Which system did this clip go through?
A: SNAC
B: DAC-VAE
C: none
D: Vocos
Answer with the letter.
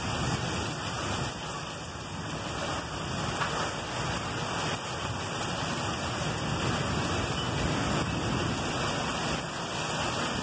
C